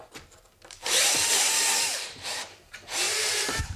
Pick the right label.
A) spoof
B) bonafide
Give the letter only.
A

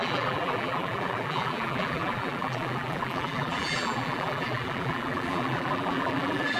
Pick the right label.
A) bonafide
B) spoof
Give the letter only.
B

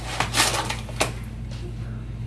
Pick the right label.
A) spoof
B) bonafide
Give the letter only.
B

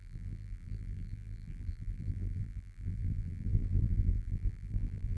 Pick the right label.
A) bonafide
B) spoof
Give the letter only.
B